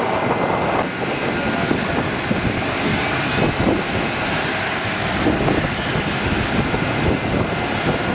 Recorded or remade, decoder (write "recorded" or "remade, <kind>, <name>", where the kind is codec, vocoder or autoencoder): recorded